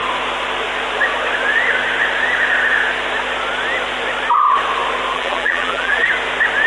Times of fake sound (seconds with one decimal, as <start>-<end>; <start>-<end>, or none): 5.1-6.1